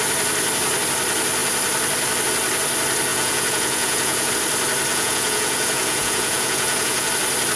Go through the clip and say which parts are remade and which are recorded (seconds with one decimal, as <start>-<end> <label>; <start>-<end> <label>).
0.0-3.1 recorded; 3.1-4.3 remade; 4.3-4.9 recorded; 4.9-7.1 remade; 7.1-7.6 recorded